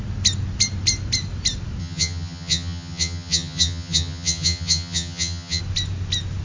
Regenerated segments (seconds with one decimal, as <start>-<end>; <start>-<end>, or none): 1.8-5.6